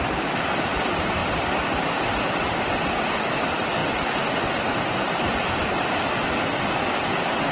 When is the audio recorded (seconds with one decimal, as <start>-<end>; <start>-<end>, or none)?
1.2-3.1; 3.8-6.7